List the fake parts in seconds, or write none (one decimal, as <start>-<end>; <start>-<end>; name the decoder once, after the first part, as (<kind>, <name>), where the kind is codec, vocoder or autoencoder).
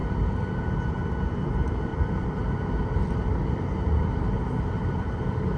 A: 0.0-0.6 (vocoder, BigVGAN v2); 1.9-5.6